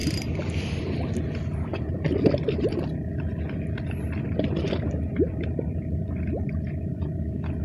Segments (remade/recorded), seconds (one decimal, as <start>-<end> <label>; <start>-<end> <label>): 0.0-7.6 recorded